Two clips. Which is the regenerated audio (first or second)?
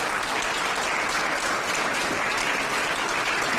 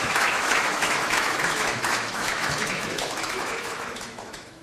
second